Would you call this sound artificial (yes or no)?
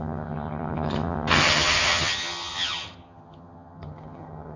yes